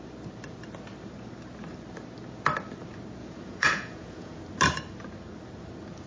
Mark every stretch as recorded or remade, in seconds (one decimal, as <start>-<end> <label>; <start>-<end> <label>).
0.0-3.2 recorded; 3.2-4.4 remade; 4.4-6.1 recorded